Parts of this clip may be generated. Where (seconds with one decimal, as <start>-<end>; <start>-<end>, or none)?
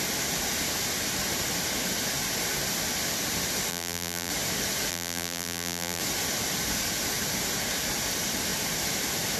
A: 3.7-4.3; 4.9-6.0